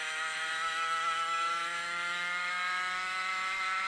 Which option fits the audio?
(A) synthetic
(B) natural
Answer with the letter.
A